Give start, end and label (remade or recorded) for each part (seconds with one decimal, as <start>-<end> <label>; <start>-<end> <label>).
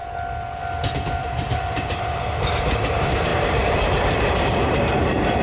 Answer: 0.0-1.2 recorded; 1.2-5.4 remade